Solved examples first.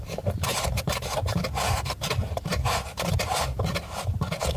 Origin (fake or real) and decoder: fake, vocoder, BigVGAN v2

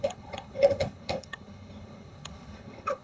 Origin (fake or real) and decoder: fake, codec, HILCodec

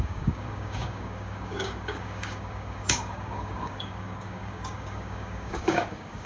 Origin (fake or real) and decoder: fake, codec, DAC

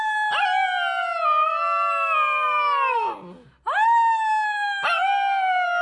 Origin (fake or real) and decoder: real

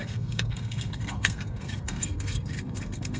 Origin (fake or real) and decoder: fake, codec, SNAC